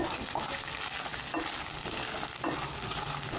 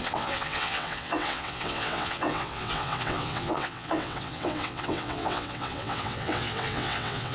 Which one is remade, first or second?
second